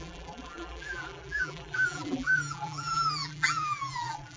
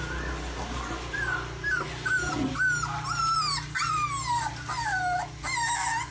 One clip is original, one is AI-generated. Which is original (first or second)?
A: second